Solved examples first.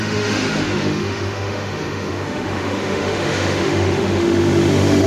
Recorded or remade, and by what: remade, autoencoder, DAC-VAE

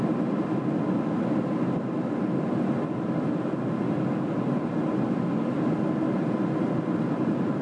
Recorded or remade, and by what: recorded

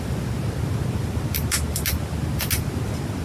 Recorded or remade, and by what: recorded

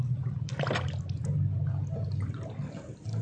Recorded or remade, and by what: recorded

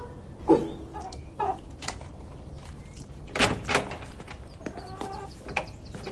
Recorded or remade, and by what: recorded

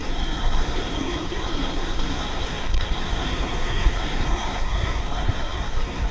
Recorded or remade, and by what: remade, codec, SNAC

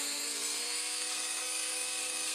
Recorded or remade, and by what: remade, codec, SNAC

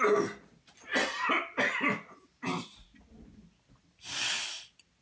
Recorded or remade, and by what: recorded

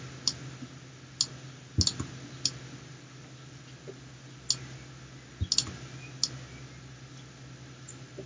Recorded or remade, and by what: recorded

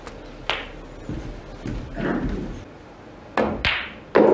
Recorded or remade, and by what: recorded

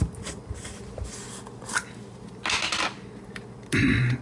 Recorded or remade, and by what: recorded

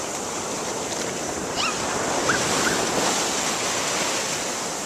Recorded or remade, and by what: recorded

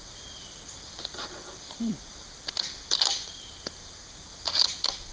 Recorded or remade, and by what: recorded